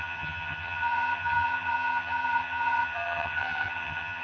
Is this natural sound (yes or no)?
no